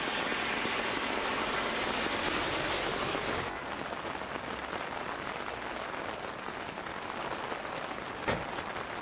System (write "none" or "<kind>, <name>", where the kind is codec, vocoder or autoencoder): none